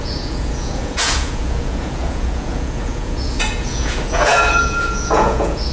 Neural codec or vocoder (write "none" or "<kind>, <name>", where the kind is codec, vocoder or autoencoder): vocoder, Vocos